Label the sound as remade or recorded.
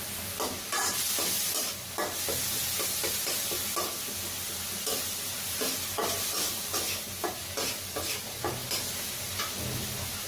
recorded